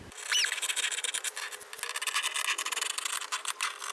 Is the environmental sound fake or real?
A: real